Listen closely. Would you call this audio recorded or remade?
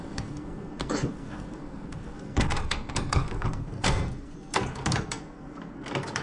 remade